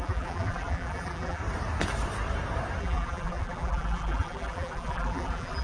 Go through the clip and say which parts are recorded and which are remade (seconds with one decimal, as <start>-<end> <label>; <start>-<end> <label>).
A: 0.0-1.4 remade; 1.4-2.8 recorded; 2.8-5.6 remade